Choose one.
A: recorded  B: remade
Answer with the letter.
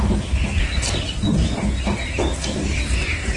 A